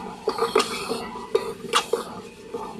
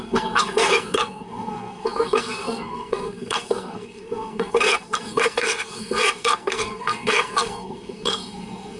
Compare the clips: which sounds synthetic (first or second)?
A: second